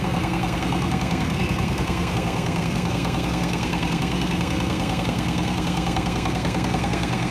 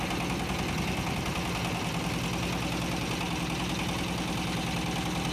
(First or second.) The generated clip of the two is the first